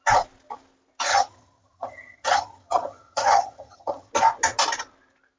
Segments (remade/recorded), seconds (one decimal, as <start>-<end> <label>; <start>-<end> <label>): 0.0-1.1 recorded; 1.1-4.1 remade; 4.1-5.4 recorded

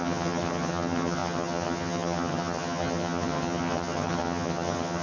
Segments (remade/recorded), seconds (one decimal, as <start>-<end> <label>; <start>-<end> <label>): 0.0-5.0 remade

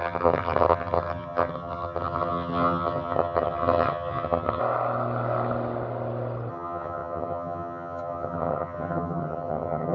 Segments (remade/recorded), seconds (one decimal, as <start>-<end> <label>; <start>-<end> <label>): 0.0-4.6 remade; 4.6-6.5 recorded; 6.5-9.9 remade